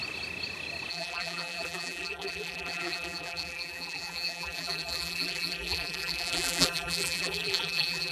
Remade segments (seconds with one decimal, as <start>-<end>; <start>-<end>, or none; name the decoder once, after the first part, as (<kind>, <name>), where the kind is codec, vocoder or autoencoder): 0.9-8.1 (vocoder, BigVGAN v2)